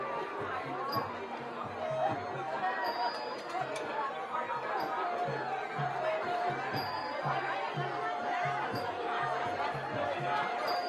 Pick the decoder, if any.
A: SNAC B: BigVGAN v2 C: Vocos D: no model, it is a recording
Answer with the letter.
D